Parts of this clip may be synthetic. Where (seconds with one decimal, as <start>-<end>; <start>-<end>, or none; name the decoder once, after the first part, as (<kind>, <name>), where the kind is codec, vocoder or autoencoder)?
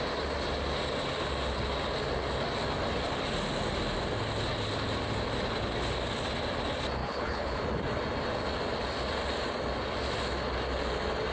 7.0-7.6 (codec, HILCodec)